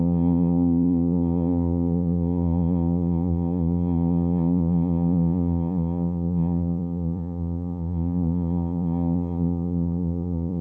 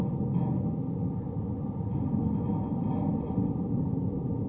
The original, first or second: second